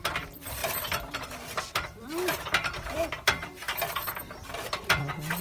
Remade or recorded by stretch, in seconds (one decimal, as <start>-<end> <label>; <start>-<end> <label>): 0.0-3.6 remade; 3.6-4.2 recorded; 4.2-5.4 remade